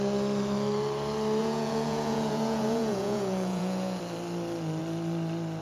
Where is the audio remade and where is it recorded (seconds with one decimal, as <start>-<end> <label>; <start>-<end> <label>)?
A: 0.0-1.4 recorded; 1.4-4.0 remade; 4.0-5.6 recorded

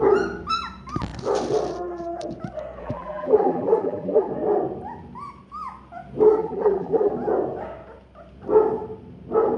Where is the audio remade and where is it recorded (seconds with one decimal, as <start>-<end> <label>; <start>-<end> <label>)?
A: 0.0-2.8 recorded; 2.8-4.3 remade; 4.3-6.4 recorded; 6.4-7.1 remade; 7.1-9.6 recorded

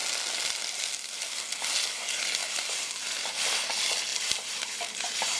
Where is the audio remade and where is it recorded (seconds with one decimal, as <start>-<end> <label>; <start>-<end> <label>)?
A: 0.0-2.4 recorded; 2.4-3.3 remade; 3.3-4.1 recorded; 4.1-5.4 remade